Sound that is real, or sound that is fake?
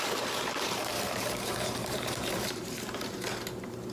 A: fake